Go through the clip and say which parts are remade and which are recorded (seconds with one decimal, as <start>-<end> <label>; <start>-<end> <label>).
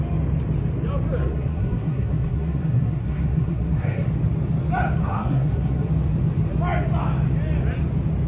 0.0-1.2 recorded; 1.2-4.1 remade; 4.1-5.0 recorded; 5.0-5.9 remade; 5.9-8.3 recorded